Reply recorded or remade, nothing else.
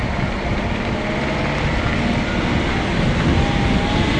recorded